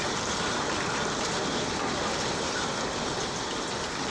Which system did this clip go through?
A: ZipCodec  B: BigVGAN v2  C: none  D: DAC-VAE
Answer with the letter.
C